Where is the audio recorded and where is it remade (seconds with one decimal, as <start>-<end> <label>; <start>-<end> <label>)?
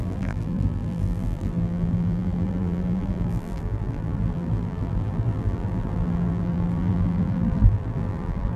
0.0-8.6 remade